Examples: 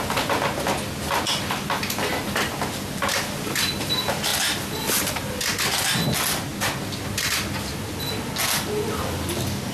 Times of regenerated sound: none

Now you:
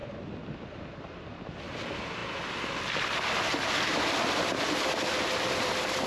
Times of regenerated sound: none

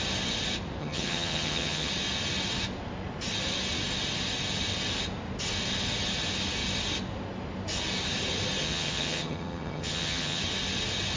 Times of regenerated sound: 0.8-1.9 (vocoder, HiFi-GAN); 8.6-10.4

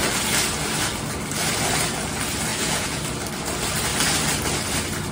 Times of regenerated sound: 2.5-3.0 (vocoder, Vocos)

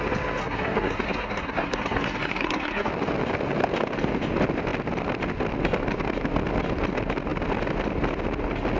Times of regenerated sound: 0.4-2.9 (codec, SNAC)

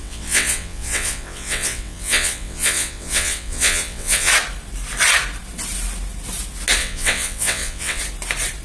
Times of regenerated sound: 0.0-4.3 (vocoder, WaveNeXt); 6.8-8.0

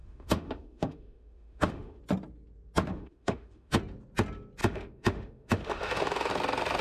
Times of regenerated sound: 0.0-2.0 (autoencoder, DAC-VAE); 2.9-3.8; 4.6-6.3